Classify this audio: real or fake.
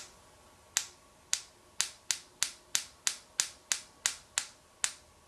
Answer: real